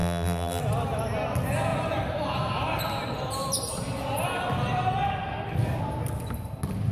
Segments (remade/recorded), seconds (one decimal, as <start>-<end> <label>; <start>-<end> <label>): 0.0-0.6 remade; 0.6-6.9 recorded